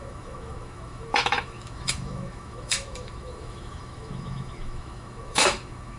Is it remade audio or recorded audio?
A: remade